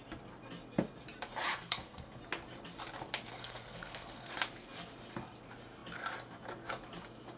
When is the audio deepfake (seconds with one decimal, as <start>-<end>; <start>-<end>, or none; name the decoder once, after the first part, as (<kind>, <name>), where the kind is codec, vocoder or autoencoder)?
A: 1.5-2.2 (codec, SNAC); 3.3-4.3